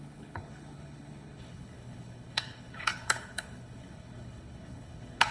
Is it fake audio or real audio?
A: fake